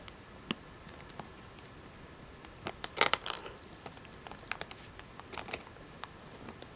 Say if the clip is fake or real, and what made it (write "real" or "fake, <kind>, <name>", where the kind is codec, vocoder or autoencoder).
real